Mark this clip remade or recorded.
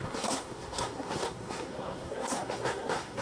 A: remade